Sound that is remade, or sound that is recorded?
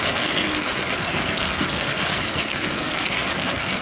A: remade